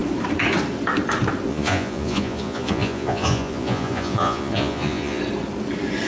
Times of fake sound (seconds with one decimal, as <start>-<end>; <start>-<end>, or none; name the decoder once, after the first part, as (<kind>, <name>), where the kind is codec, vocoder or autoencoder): 1.5-5.2 (vocoder, Vocos)